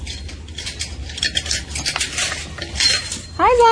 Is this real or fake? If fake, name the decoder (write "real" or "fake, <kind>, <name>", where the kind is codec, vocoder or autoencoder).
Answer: real